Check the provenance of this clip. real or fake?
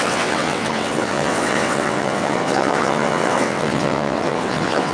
fake